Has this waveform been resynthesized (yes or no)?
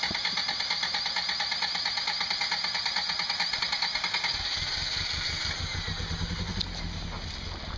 no